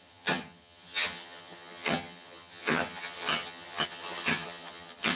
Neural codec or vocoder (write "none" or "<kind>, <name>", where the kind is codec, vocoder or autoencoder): vocoder, HiFi-GAN